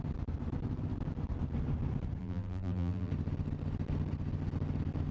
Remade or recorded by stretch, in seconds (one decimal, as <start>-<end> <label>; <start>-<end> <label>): 0.0-2.2 recorded; 2.2-3.1 remade; 3.1-5.1 recorded